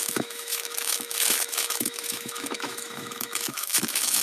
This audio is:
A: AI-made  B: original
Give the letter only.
A